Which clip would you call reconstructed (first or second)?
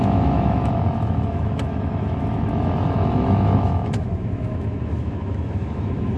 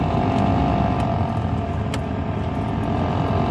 first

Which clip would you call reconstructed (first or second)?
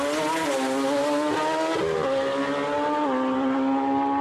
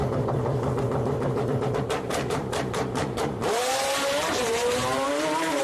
second